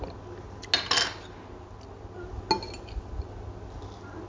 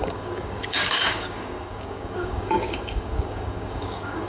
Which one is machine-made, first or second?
second